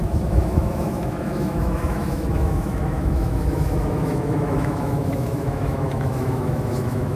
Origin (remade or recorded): remade